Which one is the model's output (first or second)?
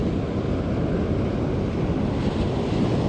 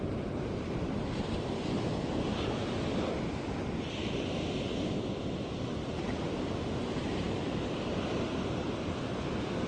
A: second